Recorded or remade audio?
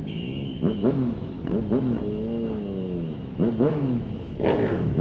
remade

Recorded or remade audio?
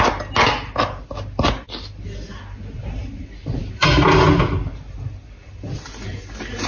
recorded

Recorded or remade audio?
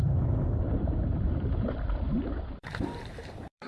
remade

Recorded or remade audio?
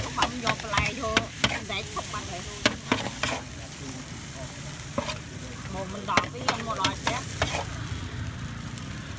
remade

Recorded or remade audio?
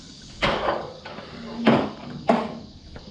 remade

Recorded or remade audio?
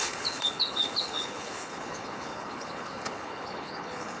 remade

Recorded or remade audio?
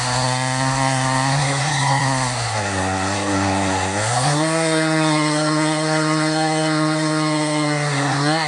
remade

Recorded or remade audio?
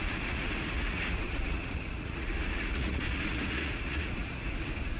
remade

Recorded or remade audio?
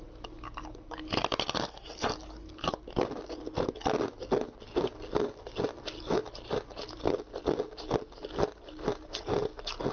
recorded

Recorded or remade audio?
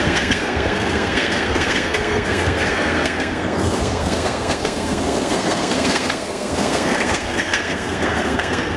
remade